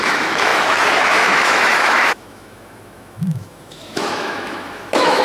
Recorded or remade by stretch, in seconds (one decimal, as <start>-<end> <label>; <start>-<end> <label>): 0.0-5.2 remade

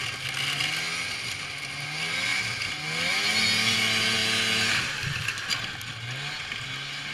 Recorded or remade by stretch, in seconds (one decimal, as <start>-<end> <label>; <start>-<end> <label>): 0.0-7.1 recorded

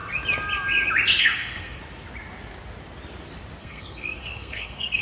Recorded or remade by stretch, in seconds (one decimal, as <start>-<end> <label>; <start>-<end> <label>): 0.0-1.2 recorded; 1.2-1.8 remade; 1.8-3.6 recorded; 3.6-5.0 remade

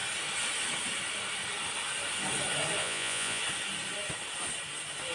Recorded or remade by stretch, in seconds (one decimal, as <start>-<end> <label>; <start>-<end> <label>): 0.0-2.8 recorded; 2.8-3.4 remade; 3.4-5.1 recorded

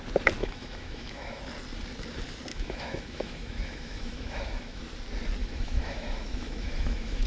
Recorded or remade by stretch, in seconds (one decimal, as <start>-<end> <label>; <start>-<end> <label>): 0.0-0.4 recorded; 0.4-1.4 remade; 1.4-2.5 recorded; 2.5-4.8 remade; 4.8-5.4 recorded; 5.4-7.3 remade